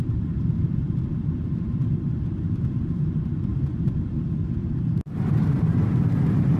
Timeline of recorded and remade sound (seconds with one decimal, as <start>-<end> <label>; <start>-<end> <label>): 0.0-6.6 remade